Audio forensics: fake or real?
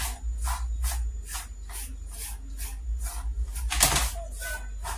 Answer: real